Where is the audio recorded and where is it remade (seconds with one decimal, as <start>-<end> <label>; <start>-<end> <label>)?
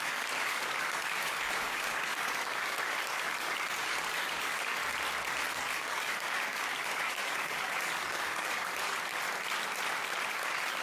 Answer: 0.0-4.8 remade; 4.8-5.5 recorded; 5.5-9.1 remade; 9.1-10.3 recorded; 10.3-10.8 remade